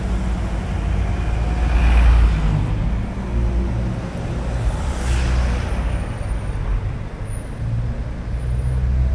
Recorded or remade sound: recorded